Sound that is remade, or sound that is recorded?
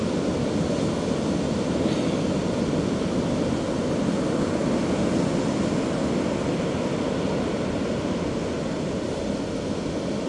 recorded